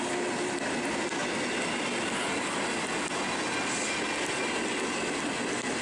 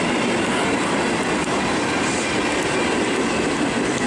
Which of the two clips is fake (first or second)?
second